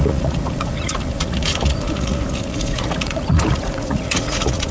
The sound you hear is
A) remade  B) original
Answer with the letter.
A